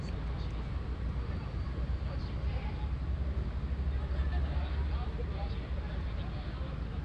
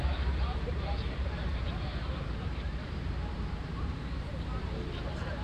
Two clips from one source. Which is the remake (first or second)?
second